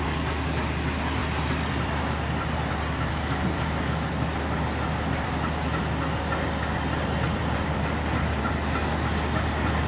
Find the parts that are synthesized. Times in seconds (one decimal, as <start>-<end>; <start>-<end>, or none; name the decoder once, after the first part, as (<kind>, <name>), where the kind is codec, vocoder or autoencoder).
1.2-5.8 (vocoder, BigVGAN v2); 7.4-8.4